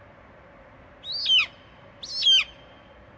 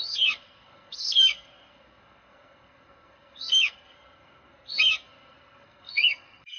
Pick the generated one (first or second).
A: second